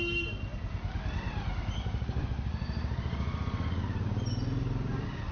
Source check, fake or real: real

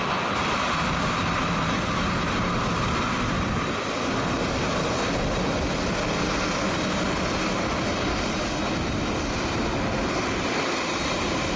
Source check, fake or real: real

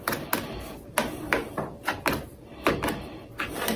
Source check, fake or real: real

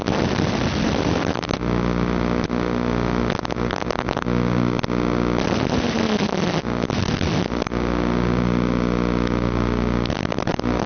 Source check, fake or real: real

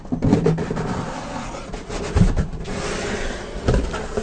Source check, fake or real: real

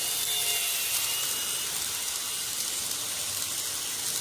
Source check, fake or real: real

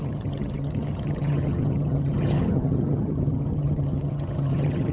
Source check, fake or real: fake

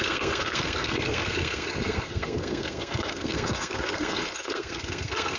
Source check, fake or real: fake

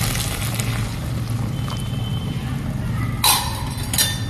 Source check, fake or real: real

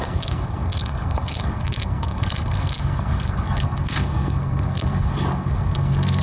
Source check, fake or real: fake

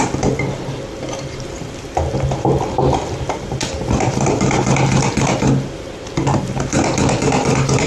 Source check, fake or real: fake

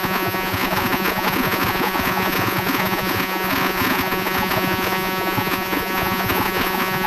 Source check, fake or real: fake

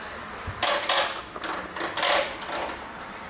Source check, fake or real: real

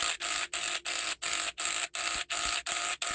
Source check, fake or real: real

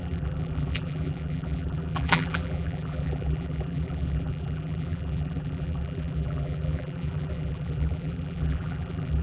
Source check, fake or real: fake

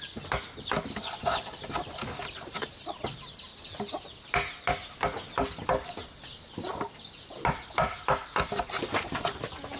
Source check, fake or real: real